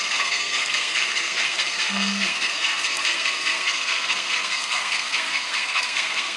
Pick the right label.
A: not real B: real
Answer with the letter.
A